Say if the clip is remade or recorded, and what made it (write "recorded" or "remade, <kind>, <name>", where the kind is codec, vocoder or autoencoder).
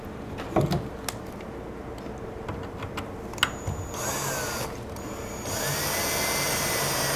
recorded